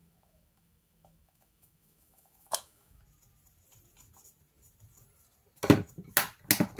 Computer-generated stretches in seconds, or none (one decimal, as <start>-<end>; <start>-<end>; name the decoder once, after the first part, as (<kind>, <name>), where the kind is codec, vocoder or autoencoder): 0.0-3.0 (autoencoder, DAC-VAE)